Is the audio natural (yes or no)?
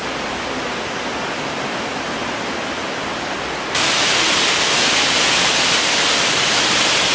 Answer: yes